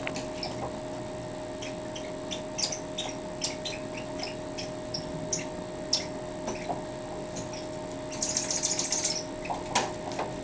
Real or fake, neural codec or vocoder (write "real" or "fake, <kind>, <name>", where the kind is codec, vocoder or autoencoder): real